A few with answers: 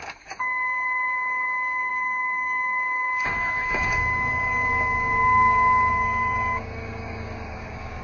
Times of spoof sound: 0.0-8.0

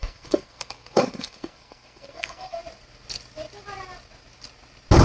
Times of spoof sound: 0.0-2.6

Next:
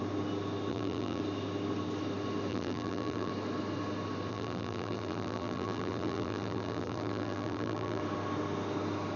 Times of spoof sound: 0.7-1.2; 2.5-3.3; 4.3-8.0